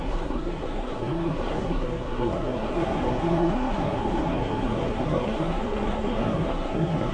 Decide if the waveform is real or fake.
fake